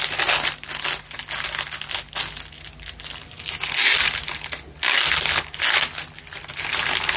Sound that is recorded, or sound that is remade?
recorded